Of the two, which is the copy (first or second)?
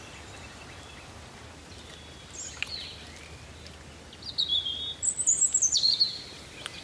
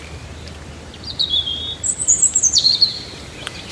second